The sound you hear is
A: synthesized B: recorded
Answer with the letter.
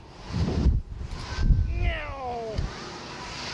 B